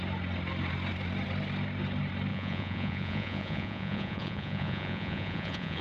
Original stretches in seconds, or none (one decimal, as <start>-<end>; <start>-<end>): 0.0-2.3